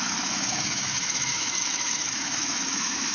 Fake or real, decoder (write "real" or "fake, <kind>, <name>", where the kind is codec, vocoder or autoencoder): fake, autoencoder, DAC-VAE